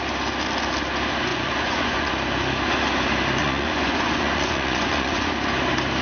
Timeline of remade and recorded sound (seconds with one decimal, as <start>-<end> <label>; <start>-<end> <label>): 0.0-1.3 recorded; 1.3-2.1 remade; 2.1-3.4 recorded; 3.4-5.3 remade; 5.3-6.0 recorded